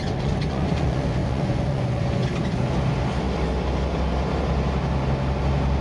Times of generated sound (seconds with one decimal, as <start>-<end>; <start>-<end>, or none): 0.0-2.2